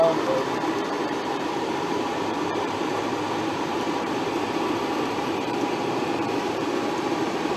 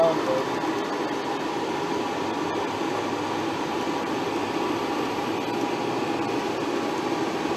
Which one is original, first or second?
second